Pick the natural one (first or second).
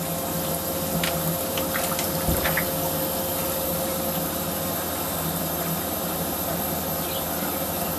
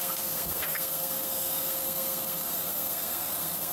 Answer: first